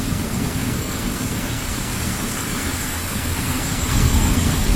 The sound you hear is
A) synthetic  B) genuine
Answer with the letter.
A